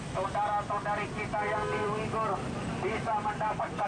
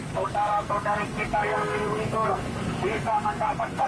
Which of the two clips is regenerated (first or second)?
second